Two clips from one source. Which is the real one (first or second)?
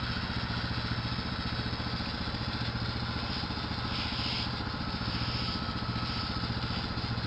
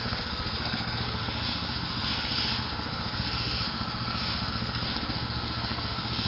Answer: first